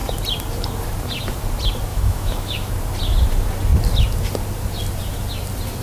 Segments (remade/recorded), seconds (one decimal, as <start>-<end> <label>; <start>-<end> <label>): 0.0-1.9 recorded; 1.9-2.7 remade; 2.7-5.8 recorded

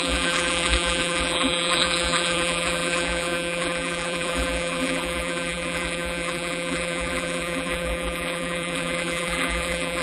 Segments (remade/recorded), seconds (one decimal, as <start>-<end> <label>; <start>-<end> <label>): 0.0-10.0 remade